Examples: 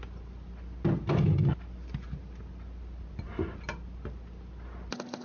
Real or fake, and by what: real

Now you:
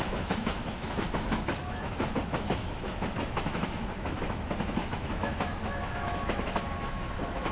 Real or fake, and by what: fake, autoencoder, DAC-VAE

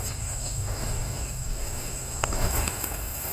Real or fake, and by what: fake, codec, DAC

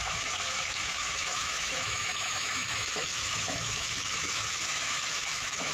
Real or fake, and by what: fake, autoencoder, DAC-VAE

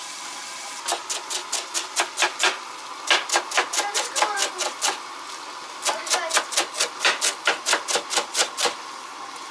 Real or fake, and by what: real